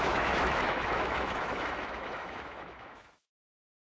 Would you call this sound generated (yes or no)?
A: yes